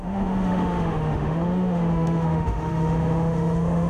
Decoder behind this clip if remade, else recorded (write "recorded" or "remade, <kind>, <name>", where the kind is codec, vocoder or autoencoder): remade, autoencoder, DAC-VAE